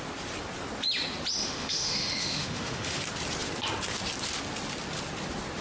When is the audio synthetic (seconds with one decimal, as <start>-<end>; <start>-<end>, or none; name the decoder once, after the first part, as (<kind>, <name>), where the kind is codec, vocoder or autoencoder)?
1.4-3.0 (autoencoder, DAC-VAE)